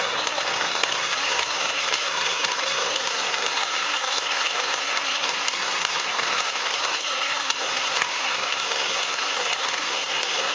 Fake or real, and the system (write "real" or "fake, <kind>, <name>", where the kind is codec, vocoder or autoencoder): fake, codec, SNAC